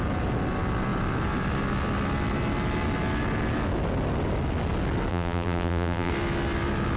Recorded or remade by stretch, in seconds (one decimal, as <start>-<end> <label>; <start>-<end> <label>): 0.0-5.1 recorded; 5.1-6.1 remade; 6.1-7.0 recorded